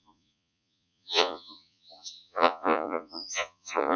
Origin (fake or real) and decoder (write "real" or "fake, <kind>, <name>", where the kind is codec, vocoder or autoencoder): fake, vocoder, Vocos